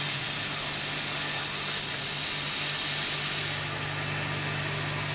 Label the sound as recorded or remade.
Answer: recorded